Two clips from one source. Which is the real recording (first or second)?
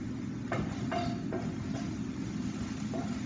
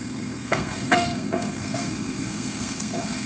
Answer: first